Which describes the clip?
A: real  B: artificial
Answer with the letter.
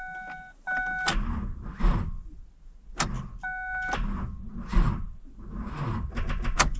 A